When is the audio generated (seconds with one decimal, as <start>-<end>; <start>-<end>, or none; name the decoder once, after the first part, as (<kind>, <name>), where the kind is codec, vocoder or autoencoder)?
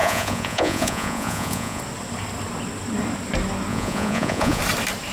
0.0-1.8 (vocoder, Vocos); 3.7-4.6